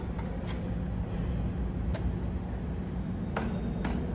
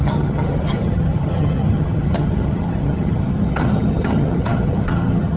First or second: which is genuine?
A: first